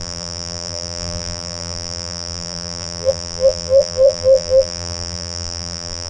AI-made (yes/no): yes